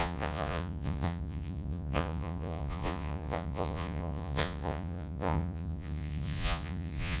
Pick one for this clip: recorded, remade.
remade